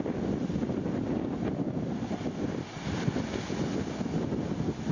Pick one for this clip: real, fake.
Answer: real